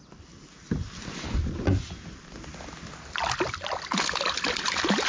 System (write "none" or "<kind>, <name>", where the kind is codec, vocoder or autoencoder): none